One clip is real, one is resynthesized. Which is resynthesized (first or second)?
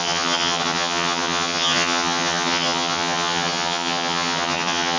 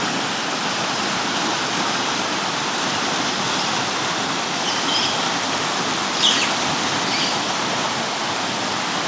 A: first